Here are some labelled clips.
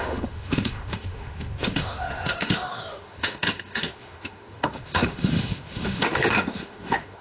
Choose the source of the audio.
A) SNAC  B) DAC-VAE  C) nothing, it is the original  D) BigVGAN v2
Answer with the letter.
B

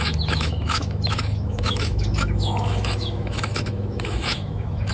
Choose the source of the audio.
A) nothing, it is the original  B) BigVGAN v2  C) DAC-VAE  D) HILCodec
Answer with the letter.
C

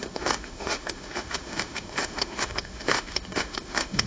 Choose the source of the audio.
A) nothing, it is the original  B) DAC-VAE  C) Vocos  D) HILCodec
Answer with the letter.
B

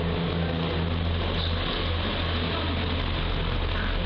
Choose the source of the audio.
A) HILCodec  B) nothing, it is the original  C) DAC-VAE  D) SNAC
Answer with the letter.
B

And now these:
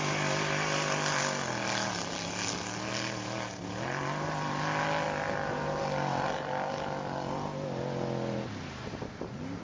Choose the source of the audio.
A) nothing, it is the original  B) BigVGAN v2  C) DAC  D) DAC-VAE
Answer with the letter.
A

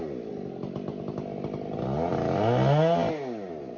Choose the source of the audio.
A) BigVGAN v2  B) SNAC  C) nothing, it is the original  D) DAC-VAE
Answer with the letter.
C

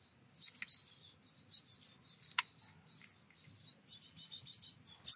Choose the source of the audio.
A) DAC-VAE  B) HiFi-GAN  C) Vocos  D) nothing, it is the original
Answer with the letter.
D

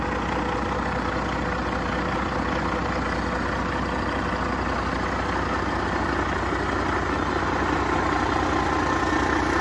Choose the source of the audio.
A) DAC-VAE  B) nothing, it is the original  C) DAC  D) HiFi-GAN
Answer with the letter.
B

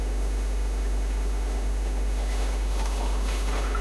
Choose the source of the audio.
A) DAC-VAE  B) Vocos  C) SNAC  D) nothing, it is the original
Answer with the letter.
A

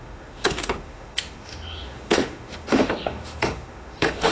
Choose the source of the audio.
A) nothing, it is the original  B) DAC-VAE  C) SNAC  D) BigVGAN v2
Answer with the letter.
B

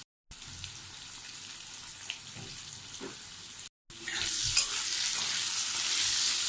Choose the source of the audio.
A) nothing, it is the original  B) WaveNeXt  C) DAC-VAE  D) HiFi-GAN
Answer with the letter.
A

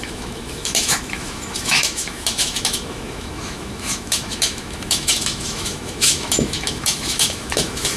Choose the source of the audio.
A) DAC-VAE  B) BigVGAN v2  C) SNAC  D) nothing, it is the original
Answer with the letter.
A